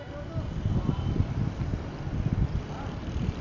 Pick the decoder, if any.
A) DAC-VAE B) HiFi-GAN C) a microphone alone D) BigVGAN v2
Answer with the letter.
C